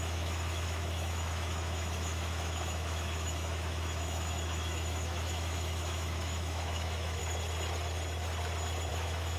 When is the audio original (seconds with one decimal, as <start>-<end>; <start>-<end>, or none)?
7.2-8.9